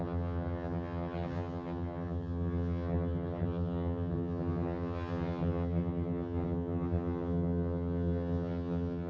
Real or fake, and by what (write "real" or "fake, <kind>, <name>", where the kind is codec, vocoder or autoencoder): fake, vocoder, HiFi-GAN